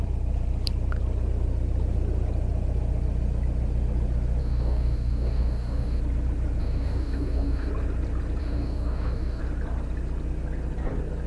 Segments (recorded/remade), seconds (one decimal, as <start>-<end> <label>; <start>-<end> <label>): 0.0-4.4 recorded; 4.4-6.0 remade; 6.0-6.6 recorded; 6.6-7.7 remade; 7.7-8.4 recorded; 8.4-9.4 remade; 9.4-11.3 recorded